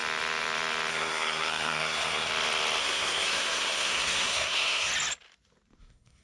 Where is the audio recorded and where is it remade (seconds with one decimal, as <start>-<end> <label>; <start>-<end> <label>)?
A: 0.0-0.9 recorded; 0.9-2.3 remade; 2.3-2.8 recorded; 2.8-4.9 remade; 4.9-5.8 recorded; 5.8-6.2 remade